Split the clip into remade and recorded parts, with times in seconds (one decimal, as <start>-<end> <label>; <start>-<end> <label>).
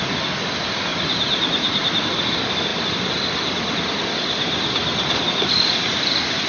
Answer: 0.0-6.5 remade